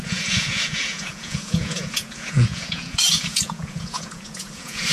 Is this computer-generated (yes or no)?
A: yes